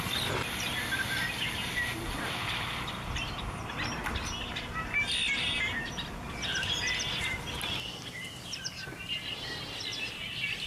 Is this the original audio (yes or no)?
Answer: yes